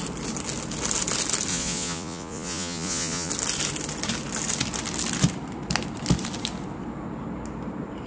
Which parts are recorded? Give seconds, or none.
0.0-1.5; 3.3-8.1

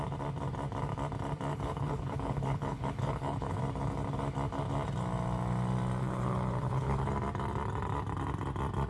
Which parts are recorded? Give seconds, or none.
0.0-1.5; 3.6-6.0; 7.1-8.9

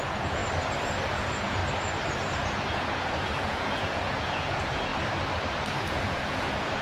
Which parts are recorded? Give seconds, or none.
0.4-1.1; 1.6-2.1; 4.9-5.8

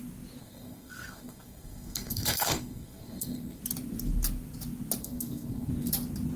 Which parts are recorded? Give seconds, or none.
0.0-0.4; 3.6-5.0; 5.7-6.4

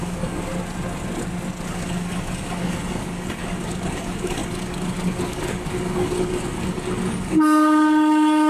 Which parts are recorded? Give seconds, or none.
0.5-1.7

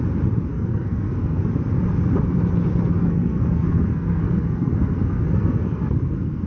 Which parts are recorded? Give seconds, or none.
0.0-0.5; 1.5-3.0